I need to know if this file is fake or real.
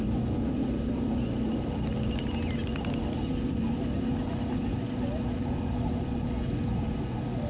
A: real